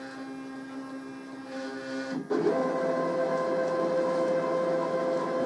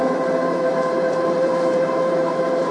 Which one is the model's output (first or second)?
second